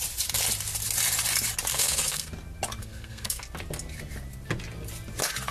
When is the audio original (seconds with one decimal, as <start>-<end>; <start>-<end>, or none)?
0.0-1.7; 2.3-2.8; 3.4-5.5